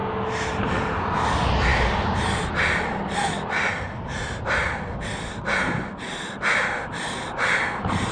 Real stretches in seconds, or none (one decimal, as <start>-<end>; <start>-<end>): 0.0-8.1